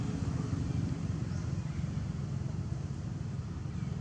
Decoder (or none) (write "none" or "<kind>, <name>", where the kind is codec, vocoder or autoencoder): none